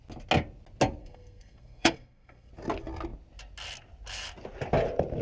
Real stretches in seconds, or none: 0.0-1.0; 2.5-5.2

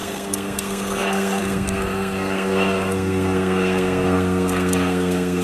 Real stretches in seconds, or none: none